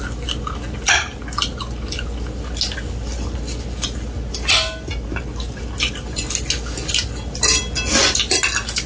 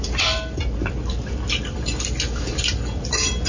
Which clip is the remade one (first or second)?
second